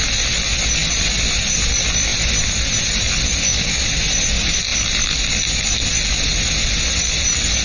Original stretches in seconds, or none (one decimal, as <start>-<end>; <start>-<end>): 0.0-7.6